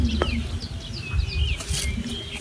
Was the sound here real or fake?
real